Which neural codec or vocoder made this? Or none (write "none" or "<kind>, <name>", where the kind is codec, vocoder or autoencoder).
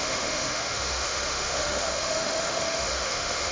autoencoder, DAC-VAE